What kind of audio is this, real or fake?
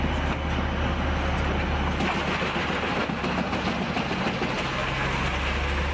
real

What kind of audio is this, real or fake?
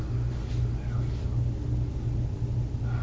real